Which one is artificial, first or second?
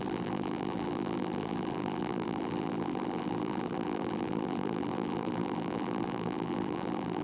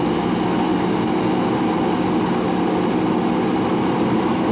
first